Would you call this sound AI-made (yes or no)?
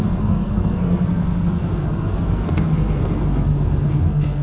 yes